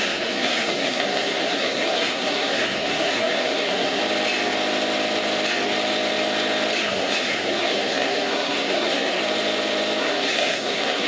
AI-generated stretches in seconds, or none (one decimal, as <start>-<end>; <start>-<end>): 0.0-4.0; 6.8-9.2; 10.0-11.1